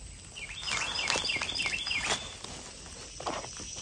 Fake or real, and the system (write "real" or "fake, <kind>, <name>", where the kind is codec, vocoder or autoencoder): real